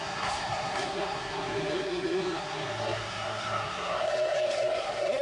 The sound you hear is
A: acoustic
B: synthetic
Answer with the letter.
B